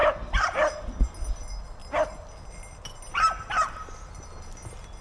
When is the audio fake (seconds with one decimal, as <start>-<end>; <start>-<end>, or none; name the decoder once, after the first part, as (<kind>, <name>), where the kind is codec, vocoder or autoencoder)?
none